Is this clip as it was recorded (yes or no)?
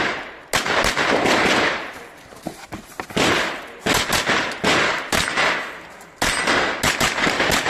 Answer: yes